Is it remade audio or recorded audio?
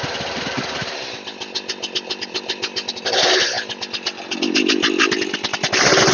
recorded